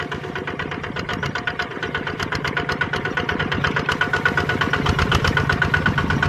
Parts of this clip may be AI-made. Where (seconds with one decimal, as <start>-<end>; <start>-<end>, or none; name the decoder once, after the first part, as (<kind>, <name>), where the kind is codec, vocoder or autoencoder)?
1.1-3.4 (vocoder, BigVGAN v2)